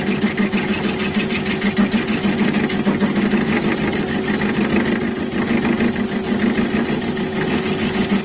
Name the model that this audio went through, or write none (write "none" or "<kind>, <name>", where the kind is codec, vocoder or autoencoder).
none